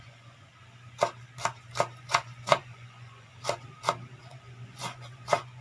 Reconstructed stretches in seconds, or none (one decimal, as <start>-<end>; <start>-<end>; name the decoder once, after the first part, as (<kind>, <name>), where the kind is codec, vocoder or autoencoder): 0.0-0.5 (vocoder, Vocos); 2.0-3.3; 4.2-5.6